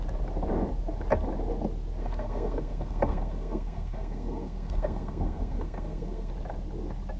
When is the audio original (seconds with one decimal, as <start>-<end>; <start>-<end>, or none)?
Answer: 0.0-2.0; 6.3-7.2